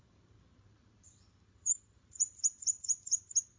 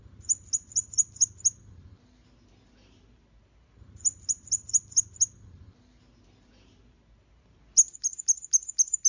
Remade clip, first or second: first